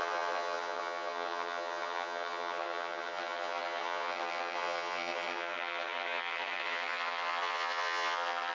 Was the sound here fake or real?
fake